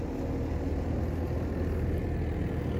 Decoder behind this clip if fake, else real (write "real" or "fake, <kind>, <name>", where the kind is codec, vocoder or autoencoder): real